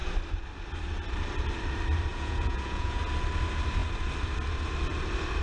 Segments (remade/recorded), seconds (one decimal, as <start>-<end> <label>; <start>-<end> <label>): 0.0-2.1 recorded; 2.1-3.0 remade; 3.0-5.4 recorded